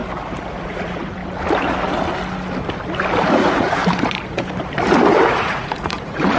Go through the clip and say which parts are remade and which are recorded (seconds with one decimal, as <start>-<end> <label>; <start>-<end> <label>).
0.0-0.5 recorded; 0.5-1.2 remade; 1.2-3.3 recorded; 3.3-3.8 remade; 3.8-5.3 recorded; 5.3-6.4 remade